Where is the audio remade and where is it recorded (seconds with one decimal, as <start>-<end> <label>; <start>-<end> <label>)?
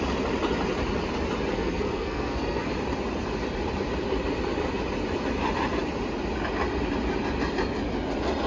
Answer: 0.0-1.5 recorded; 1.5-2.7 remade; 2.7-8.5 recorded